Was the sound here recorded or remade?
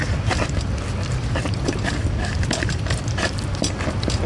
recorded